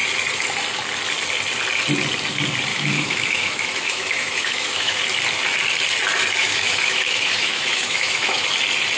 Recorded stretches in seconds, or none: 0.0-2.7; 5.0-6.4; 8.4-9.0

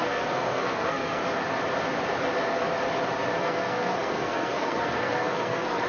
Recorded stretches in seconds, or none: 1.2-3.4

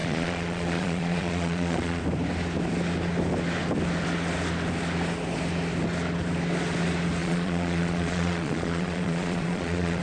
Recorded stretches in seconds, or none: 2.0-7.2

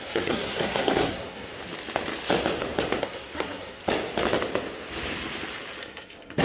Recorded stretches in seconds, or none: 1.5-3.0; 3.8-5.8

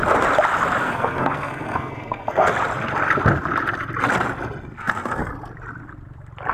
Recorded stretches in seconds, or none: 0.0-0.8; 2.5-4.8; 5.2-6.5

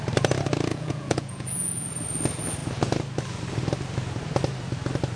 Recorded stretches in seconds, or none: 0.0-0.7; 1.9-5.2